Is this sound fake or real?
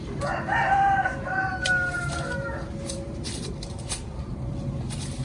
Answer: fake